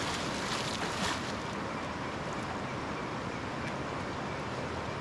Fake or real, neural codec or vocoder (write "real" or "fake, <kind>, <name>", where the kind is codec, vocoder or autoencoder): real